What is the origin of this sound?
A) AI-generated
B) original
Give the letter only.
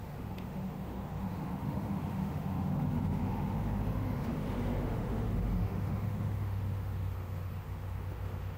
A